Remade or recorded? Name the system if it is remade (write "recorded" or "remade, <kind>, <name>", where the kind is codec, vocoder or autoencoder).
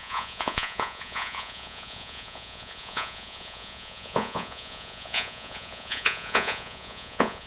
remade, vocoder, Vocos